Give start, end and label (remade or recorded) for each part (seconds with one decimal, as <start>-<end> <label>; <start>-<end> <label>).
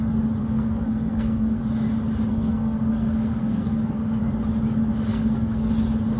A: 0.0-0.4 recorded; 0.4-1.6 remade; 1.6-2.3 recorded; 2.3-4.2 remade; 4.2-5.1 recorded; 5.1-5.7 remade; 5.7-6.2 recorded